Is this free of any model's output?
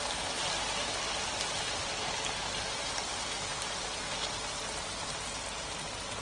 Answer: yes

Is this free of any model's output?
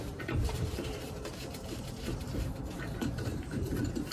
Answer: no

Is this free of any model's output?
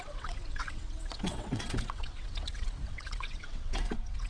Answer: no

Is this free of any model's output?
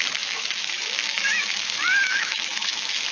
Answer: no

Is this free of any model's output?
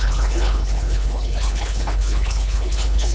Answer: no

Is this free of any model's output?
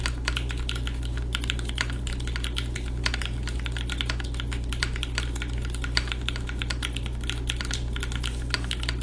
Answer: yes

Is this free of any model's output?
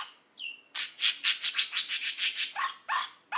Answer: yes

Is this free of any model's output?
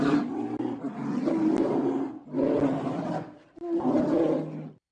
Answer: yes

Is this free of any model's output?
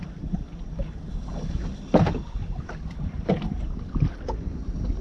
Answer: yes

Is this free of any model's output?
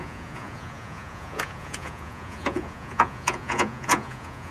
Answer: no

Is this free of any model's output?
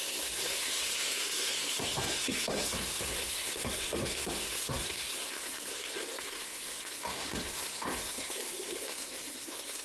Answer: no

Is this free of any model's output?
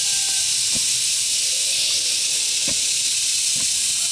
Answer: yes